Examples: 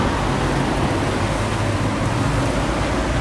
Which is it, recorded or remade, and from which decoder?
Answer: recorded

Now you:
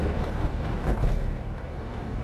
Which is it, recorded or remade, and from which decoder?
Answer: remade, codec, DAC